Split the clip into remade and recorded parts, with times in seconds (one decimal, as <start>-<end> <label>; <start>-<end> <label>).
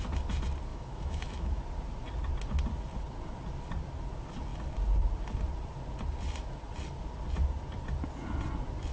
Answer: 0.0-0.7 recorded; 0.7-1.6 remade; 1.6-8.9 recorded